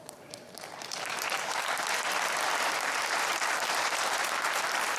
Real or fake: fake